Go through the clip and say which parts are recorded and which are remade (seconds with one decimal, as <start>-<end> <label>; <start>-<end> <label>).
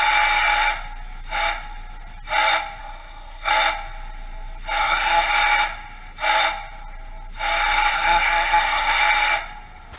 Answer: 0.0-2.8 recorded; 2.8-3.5 remade; 3.5-4.8 recorded; 4.8-5.3 remade; 5.3-7.9 recorded; 7.9-9.0 remade; 9.0-10.0 recorded